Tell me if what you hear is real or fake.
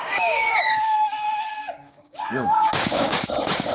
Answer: fake